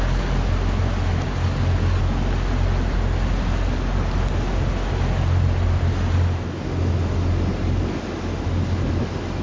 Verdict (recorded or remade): recorded